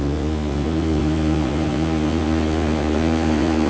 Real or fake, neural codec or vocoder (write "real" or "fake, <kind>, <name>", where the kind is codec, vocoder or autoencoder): fake, vocoder, Vocos